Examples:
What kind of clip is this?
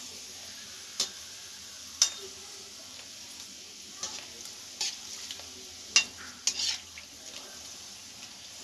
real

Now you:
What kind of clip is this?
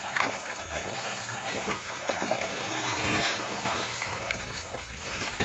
fake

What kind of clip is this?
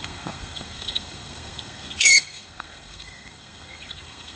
fake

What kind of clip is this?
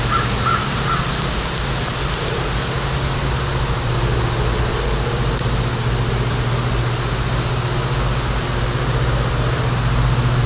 real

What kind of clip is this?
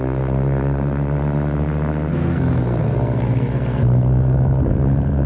fake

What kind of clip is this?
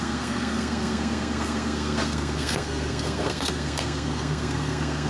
fake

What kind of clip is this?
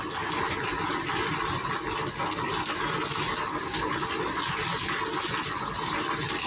real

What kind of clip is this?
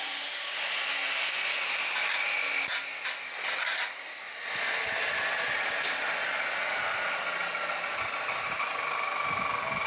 real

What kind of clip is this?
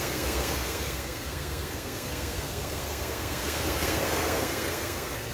fake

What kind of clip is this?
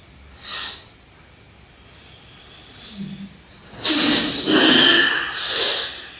real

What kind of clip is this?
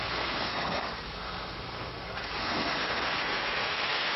fake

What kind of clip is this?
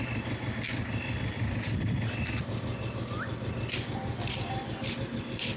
real